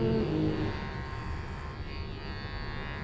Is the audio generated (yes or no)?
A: no